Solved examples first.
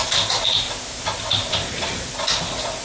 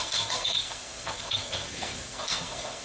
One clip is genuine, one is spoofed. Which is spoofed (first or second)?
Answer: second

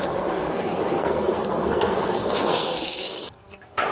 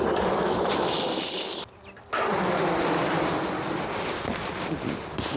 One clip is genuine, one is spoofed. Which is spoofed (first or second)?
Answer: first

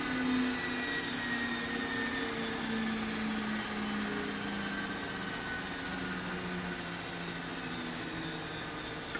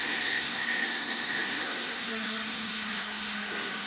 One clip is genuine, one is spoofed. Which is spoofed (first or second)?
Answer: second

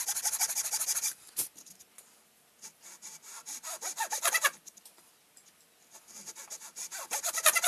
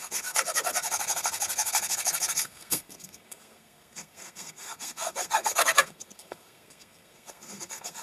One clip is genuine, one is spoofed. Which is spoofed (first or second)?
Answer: second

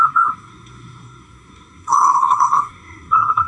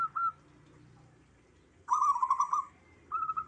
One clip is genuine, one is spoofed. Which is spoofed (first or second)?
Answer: first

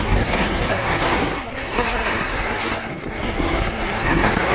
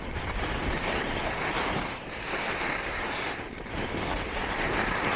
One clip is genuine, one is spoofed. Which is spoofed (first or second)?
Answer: first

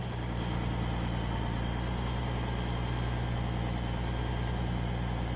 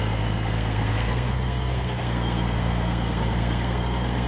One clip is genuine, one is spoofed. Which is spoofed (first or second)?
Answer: second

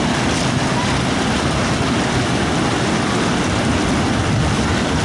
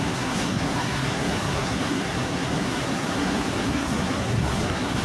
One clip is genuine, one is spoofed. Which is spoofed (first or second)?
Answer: second